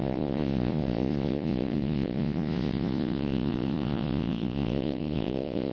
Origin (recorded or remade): remade